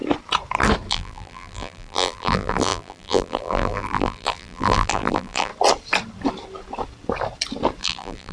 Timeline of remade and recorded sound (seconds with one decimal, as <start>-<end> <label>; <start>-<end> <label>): 0.0-0.9 recorded; 0.9-5.5 remade; 5.5-7.8 recorded; 7.8-8.3 remade